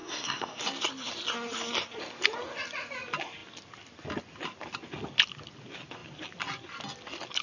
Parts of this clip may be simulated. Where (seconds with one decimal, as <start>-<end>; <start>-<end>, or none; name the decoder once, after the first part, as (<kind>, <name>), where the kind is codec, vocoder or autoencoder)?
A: 0.0-0.6 (codec, SNAC)